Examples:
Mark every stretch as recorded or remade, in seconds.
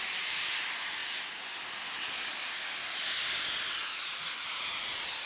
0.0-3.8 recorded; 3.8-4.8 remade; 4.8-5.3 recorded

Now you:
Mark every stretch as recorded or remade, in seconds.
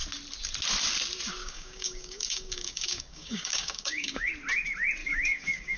0.0-1.4 recorded; 1.4-4.3 remade; 4.3-5.0 recorded; 5.0-5.8 remade